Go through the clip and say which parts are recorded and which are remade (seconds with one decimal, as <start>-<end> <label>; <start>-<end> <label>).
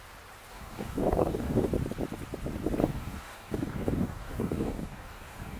0.0-0.5 recorded; 0.5-1.7 remade; 1.7-2.8 recorded; 2.8-5.6 remade